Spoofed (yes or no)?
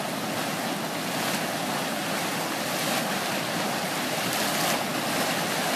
no